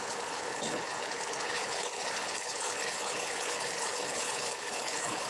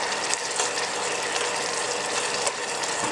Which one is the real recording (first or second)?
second